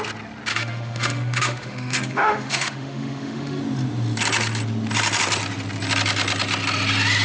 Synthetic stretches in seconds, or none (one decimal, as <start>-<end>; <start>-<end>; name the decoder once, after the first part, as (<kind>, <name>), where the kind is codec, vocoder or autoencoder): 0.5-3.6 (autoencoder, DAC-VAE)